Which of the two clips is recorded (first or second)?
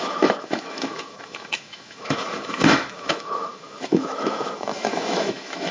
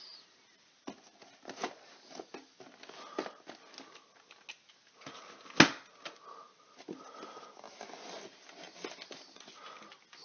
second